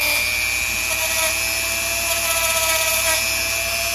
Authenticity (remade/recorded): recorded